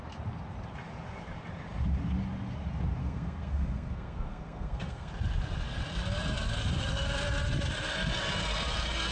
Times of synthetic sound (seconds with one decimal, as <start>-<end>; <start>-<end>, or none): 3.0-5.1